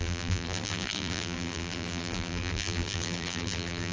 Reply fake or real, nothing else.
fake